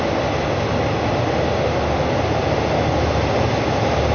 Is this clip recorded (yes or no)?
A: yes